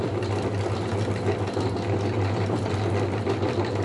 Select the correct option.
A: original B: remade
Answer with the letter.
A